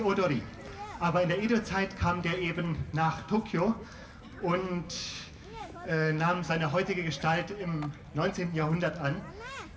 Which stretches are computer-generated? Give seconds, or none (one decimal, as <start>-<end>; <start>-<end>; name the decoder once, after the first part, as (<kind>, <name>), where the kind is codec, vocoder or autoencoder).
3.2-4.0 (autoencoder, DAC-VAE); 4.6-6.5